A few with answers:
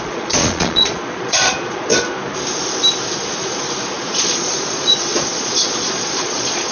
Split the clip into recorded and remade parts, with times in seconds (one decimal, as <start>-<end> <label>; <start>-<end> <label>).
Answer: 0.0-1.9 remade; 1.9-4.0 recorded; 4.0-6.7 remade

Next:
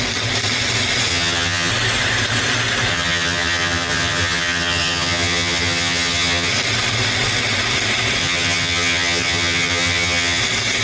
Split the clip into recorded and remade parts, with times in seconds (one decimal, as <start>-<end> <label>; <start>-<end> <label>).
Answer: 0.0-1.1 recorded; 1.1-1.7 remade; 1.7-2.9 recorded; 2.9-6.5 remade; 6.5-8.2 recorded; 8.2-10.4 remade; 10.4-10.8 recorded

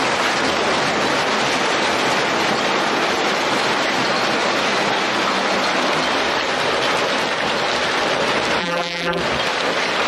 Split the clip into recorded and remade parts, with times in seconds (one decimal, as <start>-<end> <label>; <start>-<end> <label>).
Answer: 0.0-8.6 recorded; 8.6-9.2 remade; 9.2-10.1 recorded

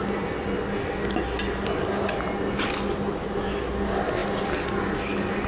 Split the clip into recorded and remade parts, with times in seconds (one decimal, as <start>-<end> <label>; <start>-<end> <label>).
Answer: 0.0-5.5 recorded

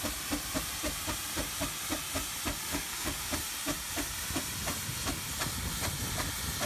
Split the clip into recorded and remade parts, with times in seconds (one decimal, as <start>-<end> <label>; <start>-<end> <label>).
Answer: 0.0-2.7 recorded; 2.7-3.3 remade; 3.3-6.7 recorded

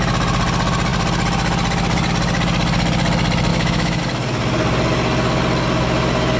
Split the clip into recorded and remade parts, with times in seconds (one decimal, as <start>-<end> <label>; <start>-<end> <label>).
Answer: 0.0-3.5 recorded; 3.5-4.0 remade; 4.0-6.4 recorded

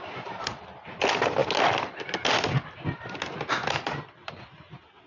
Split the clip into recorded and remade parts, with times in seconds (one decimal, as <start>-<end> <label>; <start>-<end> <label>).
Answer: 0.0-5.1 recorded